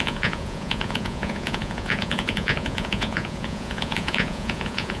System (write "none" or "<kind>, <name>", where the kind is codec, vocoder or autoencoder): vocoder, Vocos